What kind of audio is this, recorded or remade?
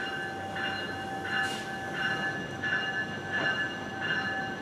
recorded